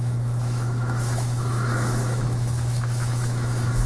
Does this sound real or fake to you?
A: fake